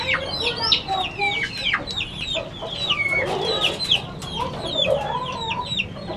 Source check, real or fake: real